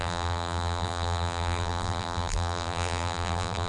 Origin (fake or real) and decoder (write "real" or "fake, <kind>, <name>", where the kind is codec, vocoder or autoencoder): fake, vocoder, BigVGAN v2